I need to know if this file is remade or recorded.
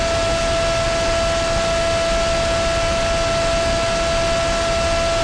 recorded